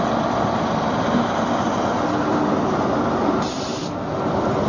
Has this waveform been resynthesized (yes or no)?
no